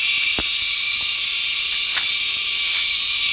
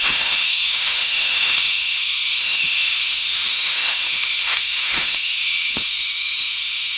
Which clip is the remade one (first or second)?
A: second